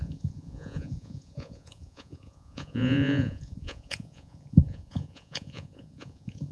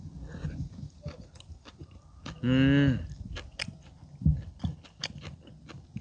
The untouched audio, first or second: second